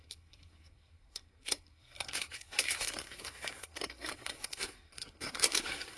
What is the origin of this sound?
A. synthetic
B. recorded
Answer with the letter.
A